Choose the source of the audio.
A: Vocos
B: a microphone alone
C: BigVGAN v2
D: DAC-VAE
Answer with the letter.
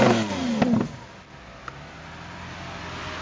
B